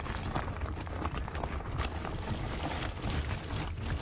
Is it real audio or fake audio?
real